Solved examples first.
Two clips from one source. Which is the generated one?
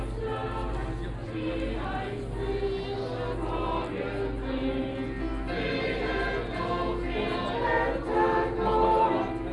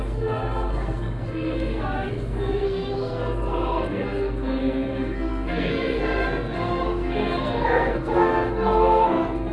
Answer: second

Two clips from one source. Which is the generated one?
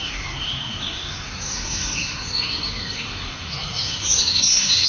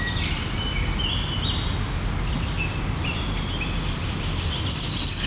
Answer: first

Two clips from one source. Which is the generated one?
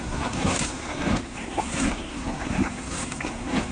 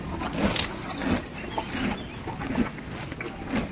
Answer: first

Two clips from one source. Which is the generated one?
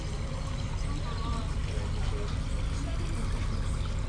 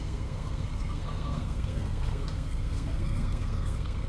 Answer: second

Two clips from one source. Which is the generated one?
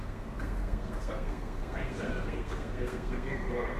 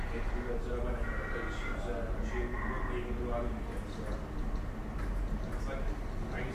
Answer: first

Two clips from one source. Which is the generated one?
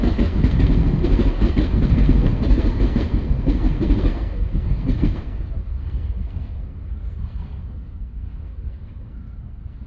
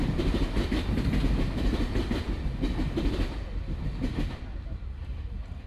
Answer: first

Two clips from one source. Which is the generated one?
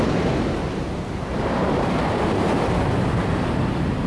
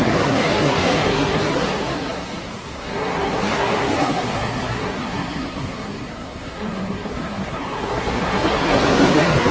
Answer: second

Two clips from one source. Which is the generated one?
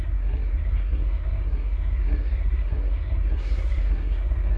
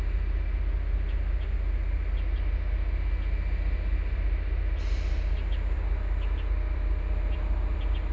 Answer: first